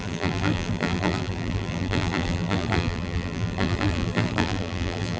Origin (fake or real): fake